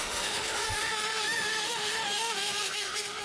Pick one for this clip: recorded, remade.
remade